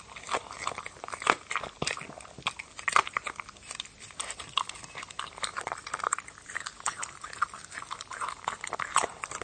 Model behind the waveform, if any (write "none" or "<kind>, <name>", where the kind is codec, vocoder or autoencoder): none